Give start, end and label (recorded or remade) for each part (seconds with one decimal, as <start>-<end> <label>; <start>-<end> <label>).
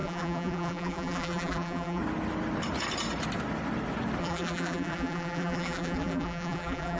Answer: 0.0-2.0 remade; 2.0-4.2 recorded; 4.2-7.0 remade